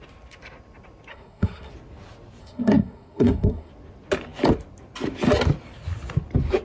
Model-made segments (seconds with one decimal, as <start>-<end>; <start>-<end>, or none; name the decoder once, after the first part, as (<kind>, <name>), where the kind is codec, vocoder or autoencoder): 1.1-1.7 (codec, SNAC); 2.4-3.7